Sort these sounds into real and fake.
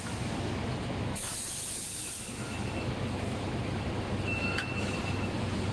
fake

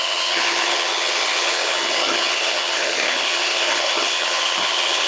fake